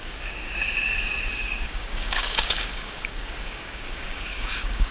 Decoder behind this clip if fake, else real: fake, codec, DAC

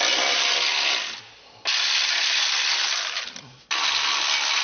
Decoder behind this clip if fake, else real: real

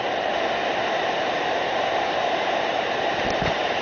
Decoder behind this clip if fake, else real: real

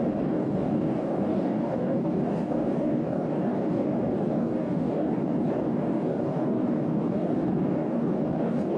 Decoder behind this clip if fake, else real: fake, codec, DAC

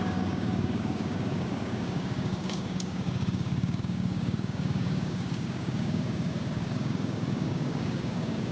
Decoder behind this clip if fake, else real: fake, codec, DAC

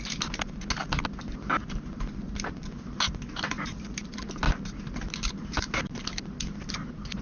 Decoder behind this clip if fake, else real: real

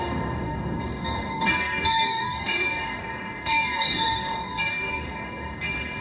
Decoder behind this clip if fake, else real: fake, codec, DAC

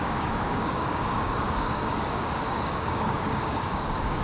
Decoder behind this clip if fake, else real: fake, codec, DAC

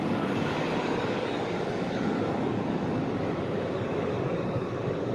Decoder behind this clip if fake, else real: fake, codec, DAC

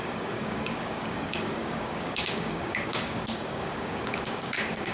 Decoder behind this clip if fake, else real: fake, codec, DAC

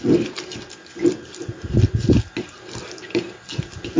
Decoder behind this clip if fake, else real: real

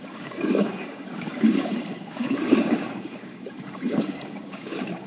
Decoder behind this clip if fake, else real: fake, codec, DAC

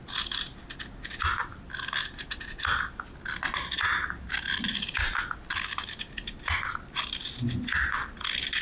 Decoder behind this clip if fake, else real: real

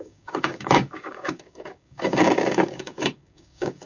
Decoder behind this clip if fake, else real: fake, codec, DAC